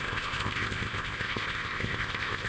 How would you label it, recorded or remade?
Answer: remade